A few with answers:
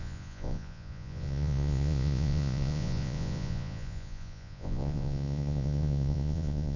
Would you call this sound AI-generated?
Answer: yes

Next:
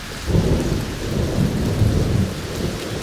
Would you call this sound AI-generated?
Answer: no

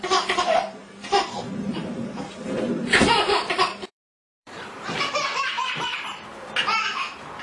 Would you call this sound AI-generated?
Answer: yes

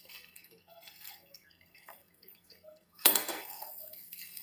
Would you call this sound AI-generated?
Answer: yes